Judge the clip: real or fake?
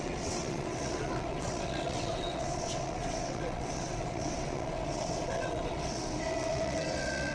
fake